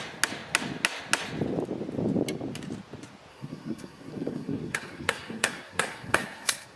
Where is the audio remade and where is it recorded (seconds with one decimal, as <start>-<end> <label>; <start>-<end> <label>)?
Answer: 0.0-3.3 recorded; 3.3-6.8 remade